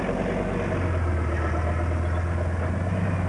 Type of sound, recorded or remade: recorded